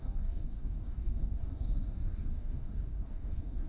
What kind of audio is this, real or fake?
fake